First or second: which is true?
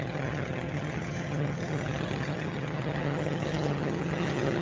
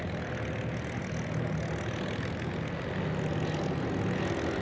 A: second